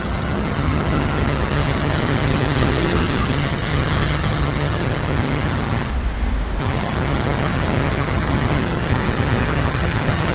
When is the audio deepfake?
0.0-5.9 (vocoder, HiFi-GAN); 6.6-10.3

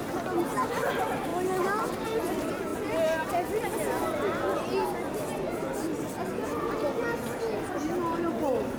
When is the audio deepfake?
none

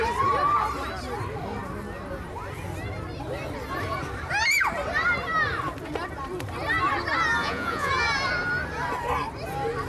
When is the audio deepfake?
7.4-7.9 (vocoder, Vocos)

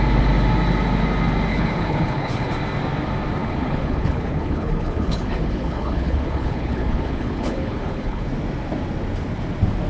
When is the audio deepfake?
1.5-2.5 (codec, HILCodec); 3.4-8.3

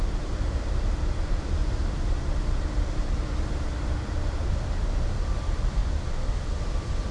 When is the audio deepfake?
0.0-1.8 (vocoder, BigVGAN v2); 4.5-5.8; 6.5-7.1

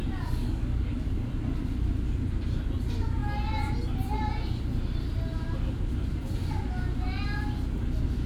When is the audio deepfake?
0.4-1.3 (codec, DAC)

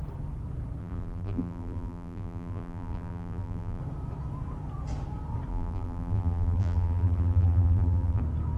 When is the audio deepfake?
0.8-3.8 (vocoder, BigVGAN v2); 5.5-8.2